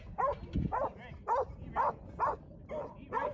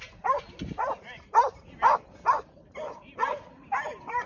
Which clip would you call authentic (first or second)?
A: first